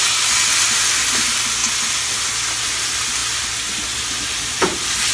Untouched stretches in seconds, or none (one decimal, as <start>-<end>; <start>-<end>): 0.0-5.1

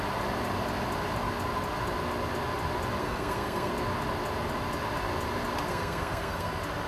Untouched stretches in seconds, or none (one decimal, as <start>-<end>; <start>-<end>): 0.0-3.0; 3.7-5.7; 6.5-6.9

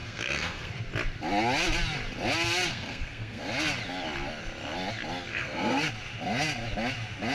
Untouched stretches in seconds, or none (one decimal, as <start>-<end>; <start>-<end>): 0.7-2.7; 3.4-5.3; 5.9-7.3

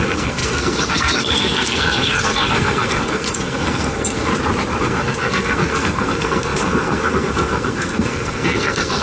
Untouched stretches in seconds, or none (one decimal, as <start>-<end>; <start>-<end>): 4.3-4.8

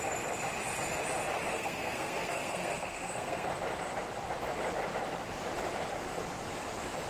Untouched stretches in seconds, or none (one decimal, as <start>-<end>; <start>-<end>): 0.0-1.5; 3.5-7.1